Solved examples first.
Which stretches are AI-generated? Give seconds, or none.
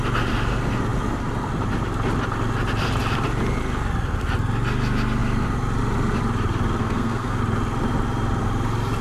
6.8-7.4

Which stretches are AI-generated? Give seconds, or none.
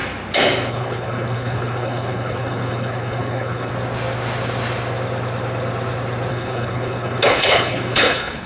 0.7-3.7; 6.3-8.5